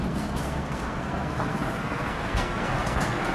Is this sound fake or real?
fake